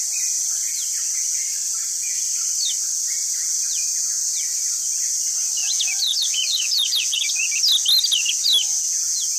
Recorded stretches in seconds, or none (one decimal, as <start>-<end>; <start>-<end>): 0.0-5.6; 7.3-9.4